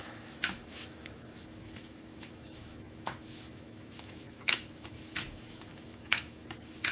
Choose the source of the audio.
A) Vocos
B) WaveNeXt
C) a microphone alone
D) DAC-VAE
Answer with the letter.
D